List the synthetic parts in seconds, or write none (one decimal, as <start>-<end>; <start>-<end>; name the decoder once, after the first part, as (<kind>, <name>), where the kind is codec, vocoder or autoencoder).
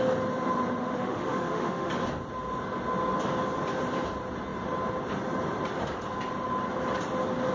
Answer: 0.8-1.9 (autoencoder, DAC-VAE)